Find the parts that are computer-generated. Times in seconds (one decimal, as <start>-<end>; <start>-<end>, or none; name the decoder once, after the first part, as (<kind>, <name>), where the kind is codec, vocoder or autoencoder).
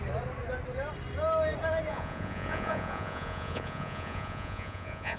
1.9-5.2 (vocoder, Vocos)